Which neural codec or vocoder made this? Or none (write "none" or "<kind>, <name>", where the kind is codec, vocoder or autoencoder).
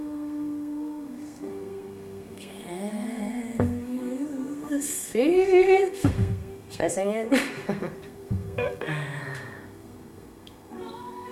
codec, SNAC